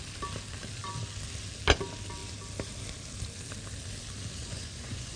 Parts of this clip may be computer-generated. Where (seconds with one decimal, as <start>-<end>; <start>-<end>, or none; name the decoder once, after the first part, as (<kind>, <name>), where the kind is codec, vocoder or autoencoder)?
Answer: 4.4-5.2 (vocoder, Vocos)